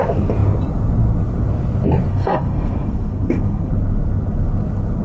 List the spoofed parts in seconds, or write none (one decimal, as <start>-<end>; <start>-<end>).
2.1-3.7

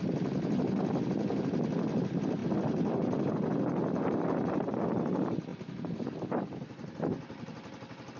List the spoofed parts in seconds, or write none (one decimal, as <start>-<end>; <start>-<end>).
none